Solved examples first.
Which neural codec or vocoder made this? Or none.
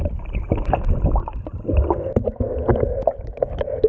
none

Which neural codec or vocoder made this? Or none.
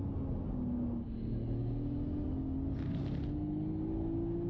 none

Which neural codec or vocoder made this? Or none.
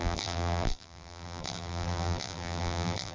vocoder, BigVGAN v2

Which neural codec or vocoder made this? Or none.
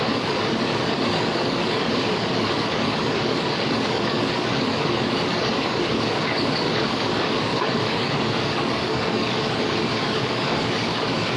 codec, DAC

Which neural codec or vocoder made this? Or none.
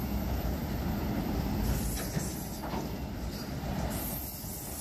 none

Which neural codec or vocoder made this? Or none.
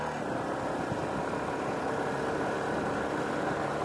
none